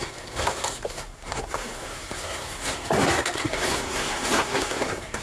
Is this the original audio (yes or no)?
no